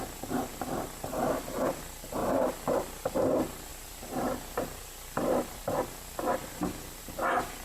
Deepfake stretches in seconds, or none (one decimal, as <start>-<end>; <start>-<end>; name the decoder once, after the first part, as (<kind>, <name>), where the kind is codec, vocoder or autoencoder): 3.7-7.0 (vocoder, BigVGAN v2)